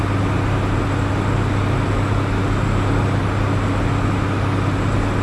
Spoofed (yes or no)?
no